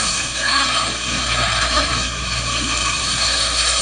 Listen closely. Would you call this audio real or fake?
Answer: fake